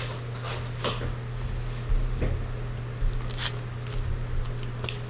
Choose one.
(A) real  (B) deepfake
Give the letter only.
A